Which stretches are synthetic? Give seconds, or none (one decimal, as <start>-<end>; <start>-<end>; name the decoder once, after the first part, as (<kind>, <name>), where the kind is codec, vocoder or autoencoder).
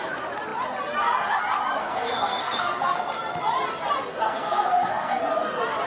1.8-3.1 (codec, SNAC); 4.1-5.2